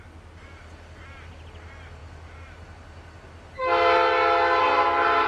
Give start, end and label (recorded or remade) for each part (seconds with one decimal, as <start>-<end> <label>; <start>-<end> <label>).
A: 0.0-5.3 recorded